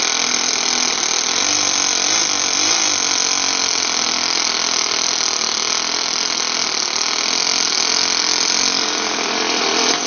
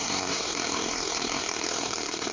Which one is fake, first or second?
second